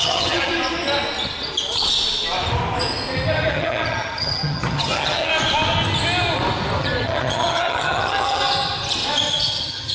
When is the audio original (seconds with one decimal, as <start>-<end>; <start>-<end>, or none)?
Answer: 0.5-3.5; 5.3-6.8; 8.4-9.3

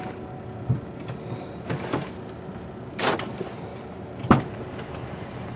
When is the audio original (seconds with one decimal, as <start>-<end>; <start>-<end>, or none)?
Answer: 0.0-3.7; 4.5-5.6

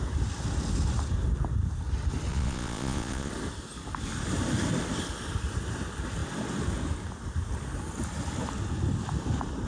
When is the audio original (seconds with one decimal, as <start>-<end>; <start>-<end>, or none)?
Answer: 0.0-2.3; 3.3-9.7